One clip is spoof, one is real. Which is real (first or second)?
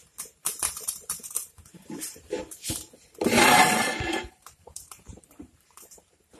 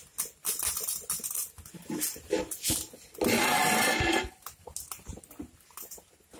second